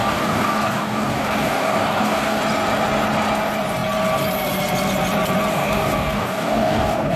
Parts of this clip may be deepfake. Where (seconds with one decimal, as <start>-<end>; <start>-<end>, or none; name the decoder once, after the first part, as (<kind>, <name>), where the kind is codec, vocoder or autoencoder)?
0.0-2.4 (codec, DAC); 5.5-7.2